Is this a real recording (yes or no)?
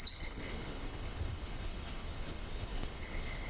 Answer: no